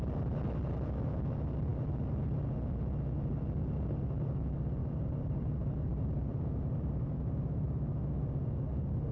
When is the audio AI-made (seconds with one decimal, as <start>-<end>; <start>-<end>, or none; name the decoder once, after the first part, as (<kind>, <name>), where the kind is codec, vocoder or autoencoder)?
4.8-8.0 (vocoder, BigVGAN v2)